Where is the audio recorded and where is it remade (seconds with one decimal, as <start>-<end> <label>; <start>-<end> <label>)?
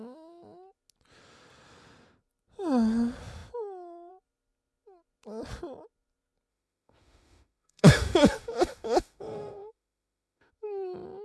0.0-6.5 recorded; 6.5-10.5 remade; 10.5-11.2 recorded